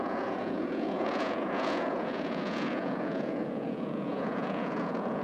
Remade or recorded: remade